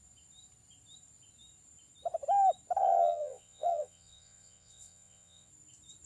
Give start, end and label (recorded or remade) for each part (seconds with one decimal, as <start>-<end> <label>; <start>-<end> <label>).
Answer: 0.0-2.8 recorded; 2.8-5.5 remade; 5.5-6.1 recorded

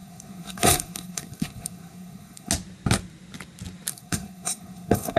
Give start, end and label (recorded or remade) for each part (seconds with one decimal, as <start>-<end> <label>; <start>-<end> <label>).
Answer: 0.0-2.5 remade; 2.5-3.9 recorded; 3.9-5.2 remade

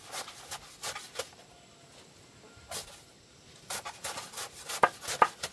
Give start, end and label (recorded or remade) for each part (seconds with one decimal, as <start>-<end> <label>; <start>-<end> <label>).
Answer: 0.0-5.5 recorded

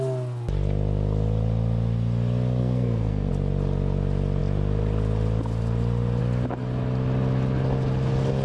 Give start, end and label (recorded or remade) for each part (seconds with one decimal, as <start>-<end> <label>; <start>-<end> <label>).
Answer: 0.0-2.6 recorded; 2.6-3.3 remade; 3.3-8.4 recorded

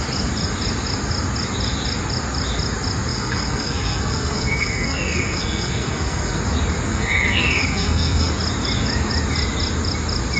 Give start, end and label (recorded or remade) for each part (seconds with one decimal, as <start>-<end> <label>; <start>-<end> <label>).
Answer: 0.0-3.1 recorded; 3.1-6.4 remade; 6.4-6.9 recorded; 6.9-8.3 remade; 8.3-10.4 recorded

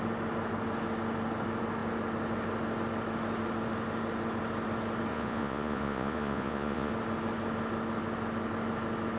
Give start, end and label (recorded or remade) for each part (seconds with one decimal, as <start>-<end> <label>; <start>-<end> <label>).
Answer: 0.0-5.1 recorded; 5.1-6.9 remade; 6.9-9.2 recorded

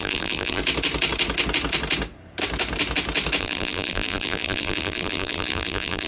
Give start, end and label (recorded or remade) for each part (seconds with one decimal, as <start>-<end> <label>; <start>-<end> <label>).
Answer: 0.0-0.6 remade; 0.6-3.4 recorded; 3.4-6.1 remade